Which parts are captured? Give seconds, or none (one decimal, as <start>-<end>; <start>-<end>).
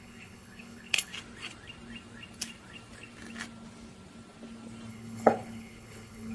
1.1-4.9